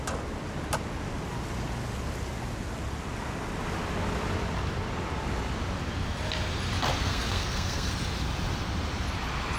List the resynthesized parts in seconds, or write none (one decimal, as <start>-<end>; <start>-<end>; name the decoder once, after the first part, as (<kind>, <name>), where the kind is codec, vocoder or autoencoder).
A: 7.0-7.9 (codec, SNAC)